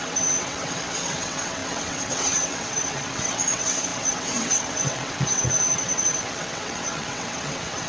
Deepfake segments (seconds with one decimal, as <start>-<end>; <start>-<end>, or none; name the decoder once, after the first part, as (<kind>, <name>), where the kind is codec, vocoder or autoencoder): 0.0-7.9 (vocoder, WaveNeXt)